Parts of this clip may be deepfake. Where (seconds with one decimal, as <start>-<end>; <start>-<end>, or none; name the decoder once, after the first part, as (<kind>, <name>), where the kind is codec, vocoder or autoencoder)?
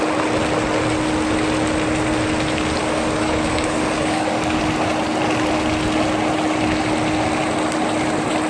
2.8-4.6 (codec, DAC)